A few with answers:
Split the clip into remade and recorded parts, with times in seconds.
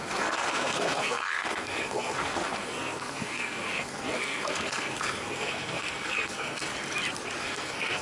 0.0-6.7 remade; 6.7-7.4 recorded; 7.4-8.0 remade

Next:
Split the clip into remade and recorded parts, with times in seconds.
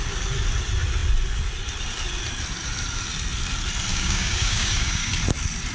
0.0-3.9 recorded; 3.9-5.1 remade; 5.1-5.7 recorded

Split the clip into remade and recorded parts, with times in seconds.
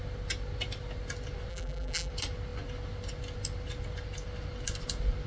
0.0-1.5 recorded; 1.5-2.1 remade; 2.1-5.3 recorded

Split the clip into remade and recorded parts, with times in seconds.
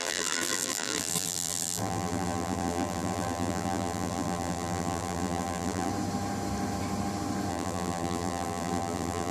0.0-5.9 remade; 5.9-7.5 recorded; 7.5-9.3 remade